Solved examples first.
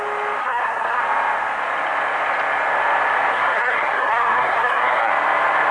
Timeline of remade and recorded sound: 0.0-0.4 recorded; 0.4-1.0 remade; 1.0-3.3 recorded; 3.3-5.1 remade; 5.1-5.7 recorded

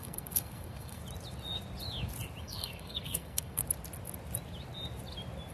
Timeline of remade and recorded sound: 0.0-1.0 remade; 1.0-2.4 recorded; 2.4-3.6 remade; 3.6-5.5 recorded

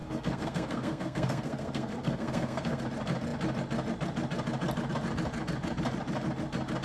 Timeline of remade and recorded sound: 0.0-2.8 remade; 2.8-6.8 recorded

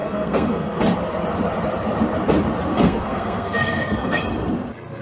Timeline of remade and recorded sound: 0.0-0.8 remade; 0.8-2.7 recorded; 2.7-4.2 remade; 4.2-5.0 recorded

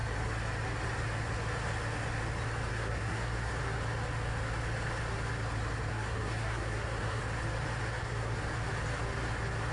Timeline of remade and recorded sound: 0.0-2.7 recorded; 2.7-3.5 remade; 3.5-5.9 recorded; 5.9-7.2 remade; 7.2-7.8 recorded; 7.8-8.4 remade; 8.4-9.7 recorded